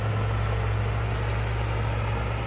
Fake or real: real